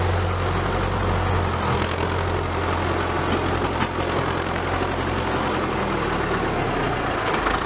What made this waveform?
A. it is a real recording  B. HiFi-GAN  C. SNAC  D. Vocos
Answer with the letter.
A